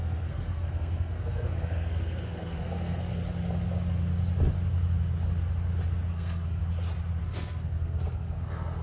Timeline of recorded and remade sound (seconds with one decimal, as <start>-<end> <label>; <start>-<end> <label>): 0.0-3.2 remade; 3.2-6.1 recorded; 6.1-6.6 remade; 6.6-7.2 recorded; 7.2-8.8 remade